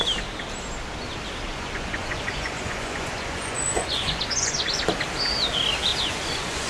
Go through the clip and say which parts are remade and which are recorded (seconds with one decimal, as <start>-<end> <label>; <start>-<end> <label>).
0.0-1.5 recorded; 1.5-4.8 remade; 4.8-5.9 recorded; 5.9-6.7 remade